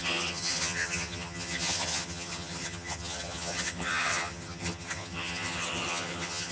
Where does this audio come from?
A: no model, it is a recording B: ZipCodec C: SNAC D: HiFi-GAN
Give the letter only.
D